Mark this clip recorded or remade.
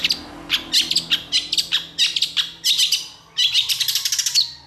recorded